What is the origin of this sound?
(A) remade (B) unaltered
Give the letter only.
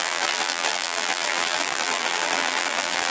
A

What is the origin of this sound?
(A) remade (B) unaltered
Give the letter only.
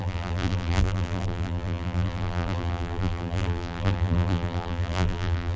A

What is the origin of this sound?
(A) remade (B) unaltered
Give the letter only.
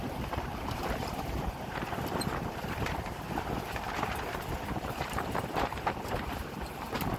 A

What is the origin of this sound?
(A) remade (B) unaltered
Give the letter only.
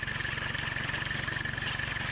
B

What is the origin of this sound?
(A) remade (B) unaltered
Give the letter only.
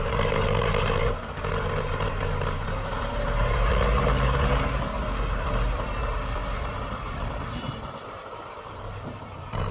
A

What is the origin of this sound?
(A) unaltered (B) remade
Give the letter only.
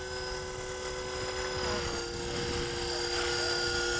A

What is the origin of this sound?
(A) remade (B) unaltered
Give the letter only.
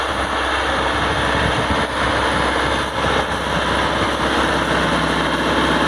B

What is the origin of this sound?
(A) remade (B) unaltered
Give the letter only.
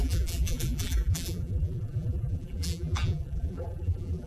A